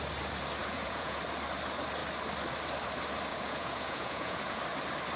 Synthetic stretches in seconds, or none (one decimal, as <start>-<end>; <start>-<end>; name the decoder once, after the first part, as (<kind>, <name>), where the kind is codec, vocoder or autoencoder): 0.6-1.2 (vocoder, Vocos); 3.3-4.6